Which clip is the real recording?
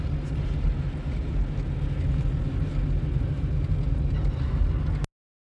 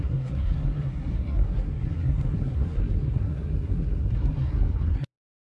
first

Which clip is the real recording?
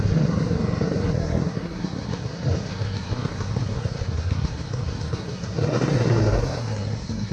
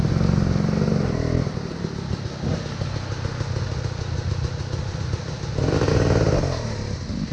second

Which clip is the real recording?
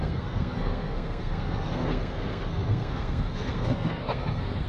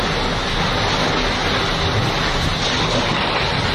second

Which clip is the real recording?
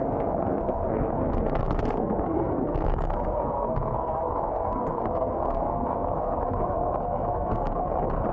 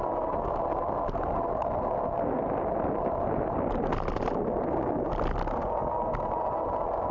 second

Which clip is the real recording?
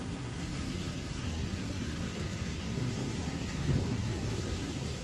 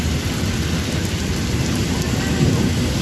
second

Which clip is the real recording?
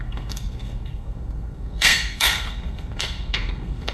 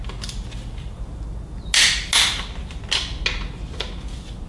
second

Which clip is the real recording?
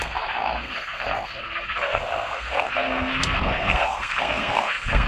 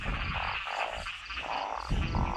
second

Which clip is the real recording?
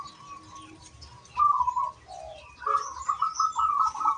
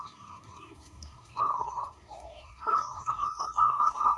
first